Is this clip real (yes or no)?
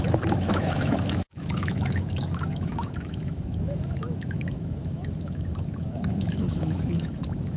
no